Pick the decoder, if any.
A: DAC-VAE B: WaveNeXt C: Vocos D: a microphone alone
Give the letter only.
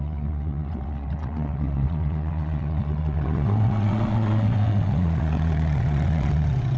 B